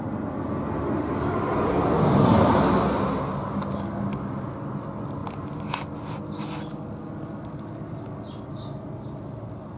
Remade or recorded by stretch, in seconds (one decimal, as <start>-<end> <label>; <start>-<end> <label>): 0.0-9.8 recorded